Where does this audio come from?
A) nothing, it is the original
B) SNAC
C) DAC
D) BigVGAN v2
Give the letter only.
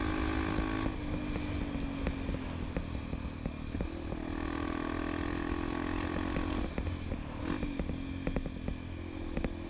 A